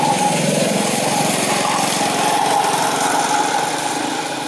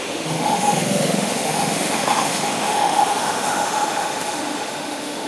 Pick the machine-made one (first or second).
second